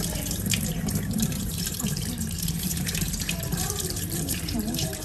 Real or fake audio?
fake